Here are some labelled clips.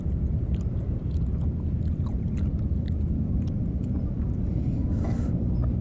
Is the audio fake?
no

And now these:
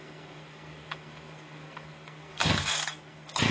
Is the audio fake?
yes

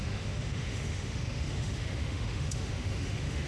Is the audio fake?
yes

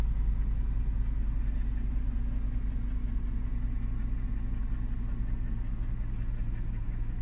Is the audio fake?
no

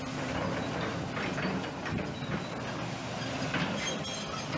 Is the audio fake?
no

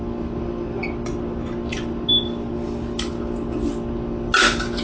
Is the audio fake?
no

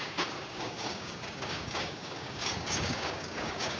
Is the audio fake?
yes